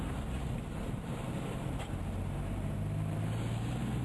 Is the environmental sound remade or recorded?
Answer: remade